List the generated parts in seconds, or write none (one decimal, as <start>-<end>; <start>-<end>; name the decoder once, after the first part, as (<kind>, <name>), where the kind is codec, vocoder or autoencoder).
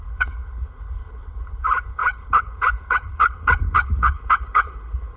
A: 0.0-5.2 (codec, HILCodec)